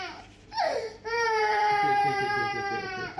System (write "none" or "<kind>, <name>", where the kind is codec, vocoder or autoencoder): vocoder, BigVGAN v2